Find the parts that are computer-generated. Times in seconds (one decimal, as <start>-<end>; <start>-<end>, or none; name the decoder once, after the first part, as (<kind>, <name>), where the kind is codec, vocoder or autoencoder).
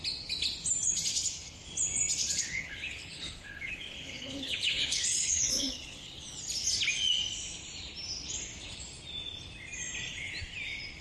1.1-1.6 (codec, HILCodec); 2.2-6.4